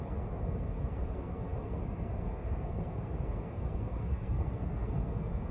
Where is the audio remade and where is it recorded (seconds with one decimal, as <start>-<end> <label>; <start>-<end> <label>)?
0.0-5.5 remade